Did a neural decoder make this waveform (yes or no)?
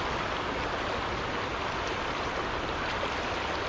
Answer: no